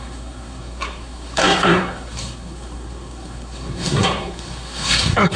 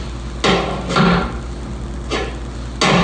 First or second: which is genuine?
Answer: second